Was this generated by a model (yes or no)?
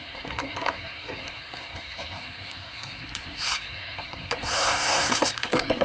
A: yes